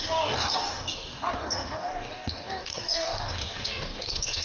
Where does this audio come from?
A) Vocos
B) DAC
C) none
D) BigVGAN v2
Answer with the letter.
B